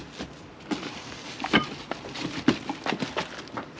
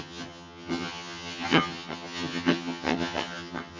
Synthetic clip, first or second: second